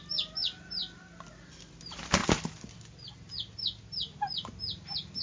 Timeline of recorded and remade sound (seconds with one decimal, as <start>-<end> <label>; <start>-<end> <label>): 0.0-5.2 recorded